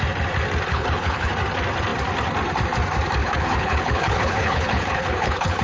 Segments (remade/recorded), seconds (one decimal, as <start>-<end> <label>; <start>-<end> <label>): 0.0-0.7 recorded; 0.7-1.3 remade; 1.3-3.2 recorded; 3.2-5.6 remade